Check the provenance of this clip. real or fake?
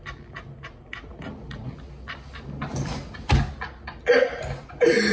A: real